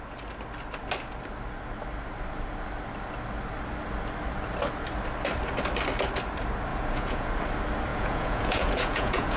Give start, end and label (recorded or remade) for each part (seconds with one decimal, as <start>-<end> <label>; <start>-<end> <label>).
0.0-6.7 recorded; 6.7-7.3 remade; 7.3-7.9 recorded; 7.9-9.4 remade